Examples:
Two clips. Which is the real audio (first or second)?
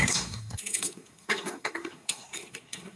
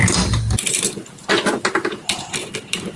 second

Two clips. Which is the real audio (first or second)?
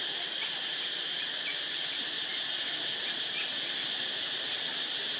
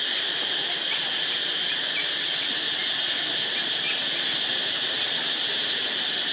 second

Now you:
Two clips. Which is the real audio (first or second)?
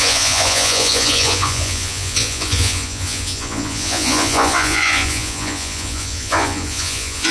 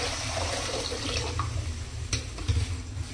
second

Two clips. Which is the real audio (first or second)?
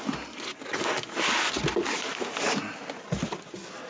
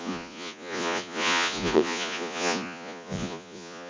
first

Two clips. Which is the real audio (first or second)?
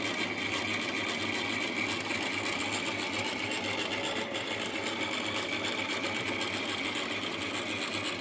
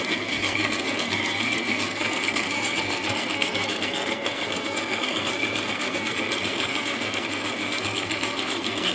first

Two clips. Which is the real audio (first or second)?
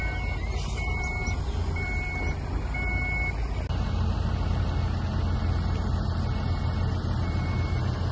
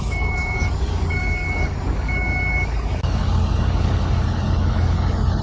first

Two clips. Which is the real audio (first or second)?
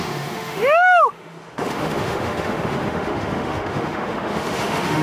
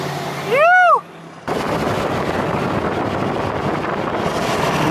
second